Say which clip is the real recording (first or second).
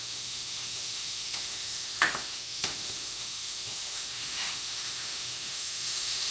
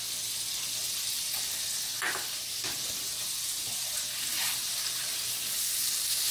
second